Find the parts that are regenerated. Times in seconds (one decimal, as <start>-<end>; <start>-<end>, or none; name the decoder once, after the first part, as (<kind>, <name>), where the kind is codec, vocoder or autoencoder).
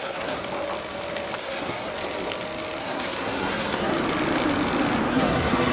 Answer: 0.0-0.4 (codec, SNAC); 1.4-1.9; 2.8-3.9; 5.1-5.7